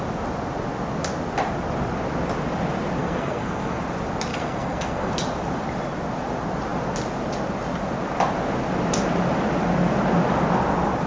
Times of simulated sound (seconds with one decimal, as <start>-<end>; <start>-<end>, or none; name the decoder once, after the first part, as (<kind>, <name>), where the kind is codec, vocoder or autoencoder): 3.0-3.8 (codec, SNAC); 4.3-5.1